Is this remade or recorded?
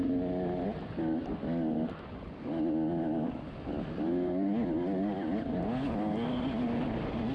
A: recorded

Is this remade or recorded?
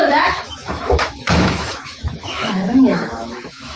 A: remade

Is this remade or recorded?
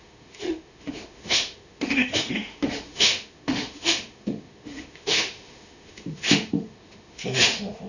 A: remade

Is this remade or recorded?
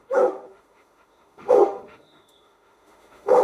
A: remade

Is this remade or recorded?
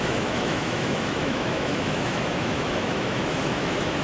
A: remade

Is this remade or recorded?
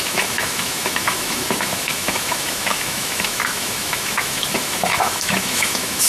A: remade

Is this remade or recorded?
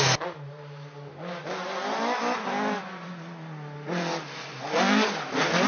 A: recorded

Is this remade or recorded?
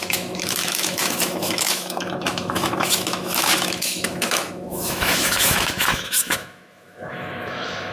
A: remade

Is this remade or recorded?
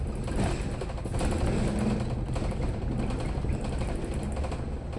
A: recorded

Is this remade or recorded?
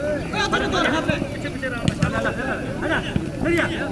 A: recorded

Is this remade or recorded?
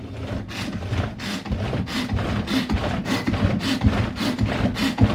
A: recorded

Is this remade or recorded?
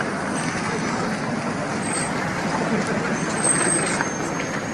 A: recorded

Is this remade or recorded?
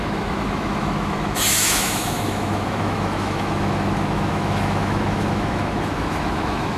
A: remade